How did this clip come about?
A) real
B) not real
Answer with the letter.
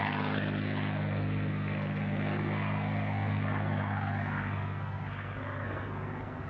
B